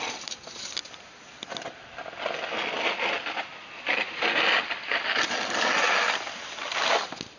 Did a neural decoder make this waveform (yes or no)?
no